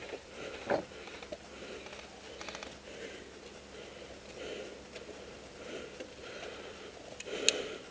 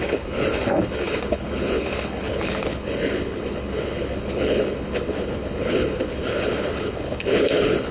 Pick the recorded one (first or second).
first